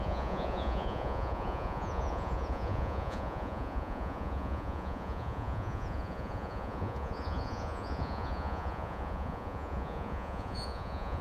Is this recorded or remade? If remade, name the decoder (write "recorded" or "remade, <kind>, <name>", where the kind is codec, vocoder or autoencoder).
remade, vocoder, Vocos